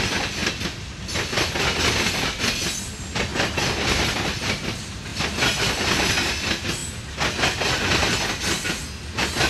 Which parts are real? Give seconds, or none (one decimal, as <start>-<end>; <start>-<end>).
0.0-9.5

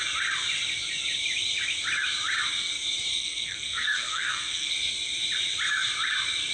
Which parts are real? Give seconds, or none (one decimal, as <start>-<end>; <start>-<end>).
0.0-3.1; 4.7-6.5

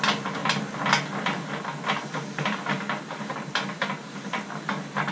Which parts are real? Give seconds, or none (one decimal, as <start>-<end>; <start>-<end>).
0.0-5.1